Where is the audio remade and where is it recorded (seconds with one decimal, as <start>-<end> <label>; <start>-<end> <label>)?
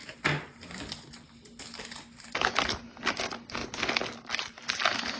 0.0-5.2 recorded